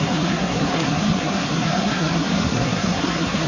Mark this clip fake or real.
fake